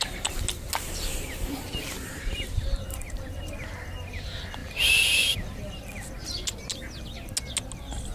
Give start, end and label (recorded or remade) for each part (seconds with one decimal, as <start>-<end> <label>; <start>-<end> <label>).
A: 0.0-1.1 recorded; 1.1-3.1 remade; 3.1-8.1 recorded